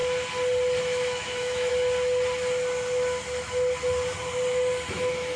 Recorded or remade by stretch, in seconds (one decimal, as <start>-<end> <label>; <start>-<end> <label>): 0.0-0.8 recorded; 0.8-1.7 remade; 1.7-4.9 recorded; 4.9-5.4 remade